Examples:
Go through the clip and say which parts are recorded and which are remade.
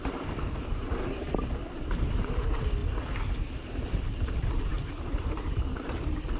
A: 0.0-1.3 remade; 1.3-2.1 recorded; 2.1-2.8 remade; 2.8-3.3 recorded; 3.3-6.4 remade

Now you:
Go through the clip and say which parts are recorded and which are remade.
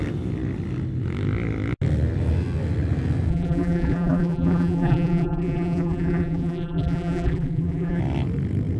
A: 0.0-3.3 recorded; 3.3-8.0 remade; 8.0-8.8 recorded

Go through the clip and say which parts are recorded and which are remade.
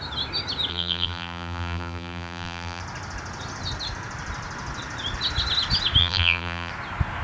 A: 0.0-0.7 recorded; 0.7-2.8 remade; 2.8-6.0 recorded; 6.0-6.7 remade; 6.7-7.2 recorded